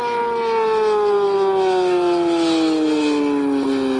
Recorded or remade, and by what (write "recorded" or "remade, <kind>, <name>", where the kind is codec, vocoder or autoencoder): recorded